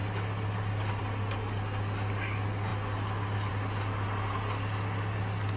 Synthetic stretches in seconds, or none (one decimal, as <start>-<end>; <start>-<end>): none